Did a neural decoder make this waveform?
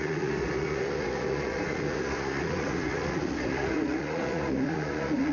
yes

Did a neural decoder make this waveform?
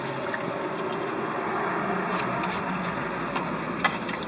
no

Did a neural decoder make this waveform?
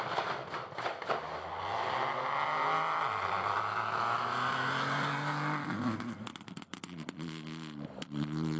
no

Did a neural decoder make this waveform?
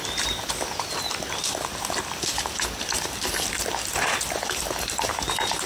no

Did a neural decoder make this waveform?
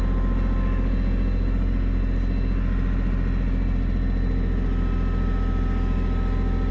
no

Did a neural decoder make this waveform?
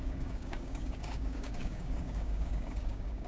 yes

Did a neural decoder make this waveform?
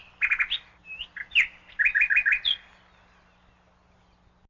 no